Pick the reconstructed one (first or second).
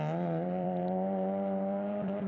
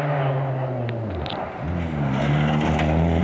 first